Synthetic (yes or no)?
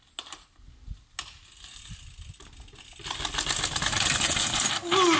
no